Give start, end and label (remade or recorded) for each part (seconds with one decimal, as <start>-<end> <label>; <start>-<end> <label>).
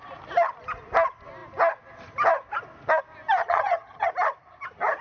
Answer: 0.0-3.4 recorded; 3.4-4.1 remade; 4.1-5.0 recorded